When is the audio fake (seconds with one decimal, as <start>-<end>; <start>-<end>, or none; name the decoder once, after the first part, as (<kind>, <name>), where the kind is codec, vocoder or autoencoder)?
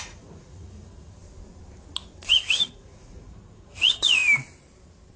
0.0-1.2 (vocoder, Vocos); 2.3-4.2